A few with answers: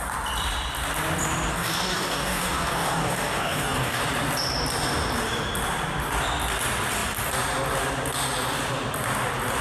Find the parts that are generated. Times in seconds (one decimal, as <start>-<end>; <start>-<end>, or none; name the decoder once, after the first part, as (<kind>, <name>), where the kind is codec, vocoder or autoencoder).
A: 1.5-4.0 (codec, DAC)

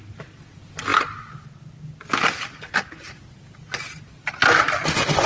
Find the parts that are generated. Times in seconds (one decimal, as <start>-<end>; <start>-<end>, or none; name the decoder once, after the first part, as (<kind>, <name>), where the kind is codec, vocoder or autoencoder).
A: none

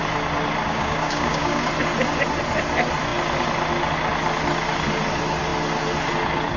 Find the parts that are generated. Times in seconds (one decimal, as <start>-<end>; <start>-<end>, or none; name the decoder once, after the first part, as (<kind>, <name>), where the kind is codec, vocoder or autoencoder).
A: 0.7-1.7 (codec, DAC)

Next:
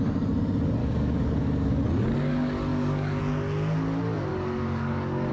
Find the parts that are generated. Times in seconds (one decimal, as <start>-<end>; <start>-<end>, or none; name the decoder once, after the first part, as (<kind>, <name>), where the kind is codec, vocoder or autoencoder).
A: 0.8-1.8 (codec, DAC); 2.7-3.2; 4.3-5.3

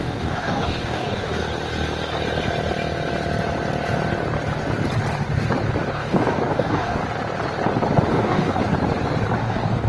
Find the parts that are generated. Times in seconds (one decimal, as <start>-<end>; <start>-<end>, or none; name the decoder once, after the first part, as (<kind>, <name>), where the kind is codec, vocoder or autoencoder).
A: 0.0-1.4 (codec, DAC); 5.9-7.0; 8.1-8.6; 9.4-9.9

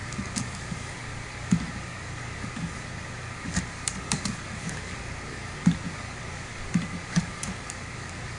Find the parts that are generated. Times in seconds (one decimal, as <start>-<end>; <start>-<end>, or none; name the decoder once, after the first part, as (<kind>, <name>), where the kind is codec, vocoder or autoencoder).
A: 0.0-8.4 (codec, DAC)